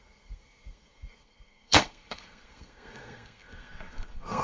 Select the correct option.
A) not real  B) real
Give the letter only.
A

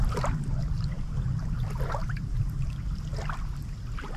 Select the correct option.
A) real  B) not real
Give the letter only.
A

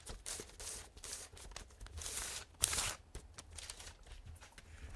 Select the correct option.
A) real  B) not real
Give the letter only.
A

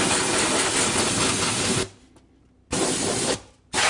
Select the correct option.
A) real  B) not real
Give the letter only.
A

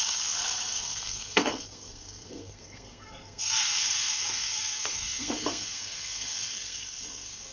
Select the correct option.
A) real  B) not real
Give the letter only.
B